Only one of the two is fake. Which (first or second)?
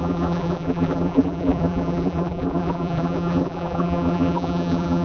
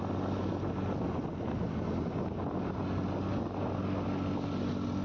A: first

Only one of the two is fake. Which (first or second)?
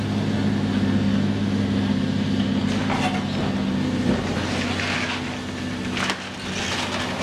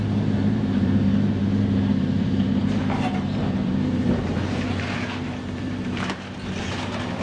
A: second